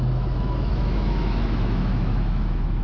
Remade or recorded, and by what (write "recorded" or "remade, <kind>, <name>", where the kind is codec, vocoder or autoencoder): remade, autoencoder, DAC-VAE